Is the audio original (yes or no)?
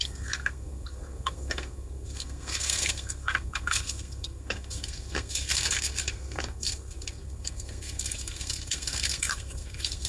no